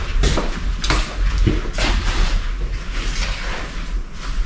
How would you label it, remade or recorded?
recorded